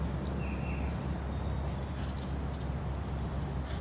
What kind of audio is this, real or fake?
real